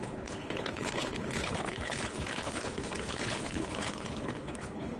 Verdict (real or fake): fake